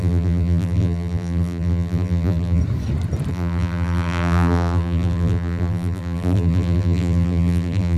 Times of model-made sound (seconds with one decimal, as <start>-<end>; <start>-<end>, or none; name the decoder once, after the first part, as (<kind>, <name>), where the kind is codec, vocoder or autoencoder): 0.0-2.6 (vocoder, BigVGAN v2); 3.3-8.0

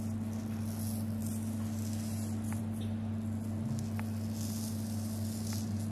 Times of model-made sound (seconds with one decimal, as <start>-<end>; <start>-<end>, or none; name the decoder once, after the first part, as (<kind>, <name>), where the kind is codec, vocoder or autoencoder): none

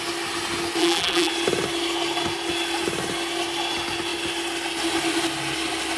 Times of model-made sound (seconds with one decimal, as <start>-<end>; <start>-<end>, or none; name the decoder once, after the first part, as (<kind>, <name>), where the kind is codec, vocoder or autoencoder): 0.8-1.3 (vocoder, BigVGAN v2)

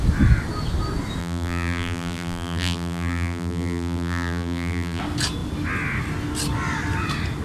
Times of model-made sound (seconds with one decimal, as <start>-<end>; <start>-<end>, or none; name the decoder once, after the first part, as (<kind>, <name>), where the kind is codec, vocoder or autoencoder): 1.2-5.0 (vocoder, BigVGAN v2)